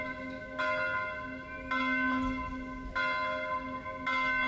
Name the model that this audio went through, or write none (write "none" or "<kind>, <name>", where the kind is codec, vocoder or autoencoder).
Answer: none